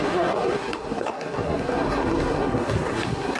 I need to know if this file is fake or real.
fake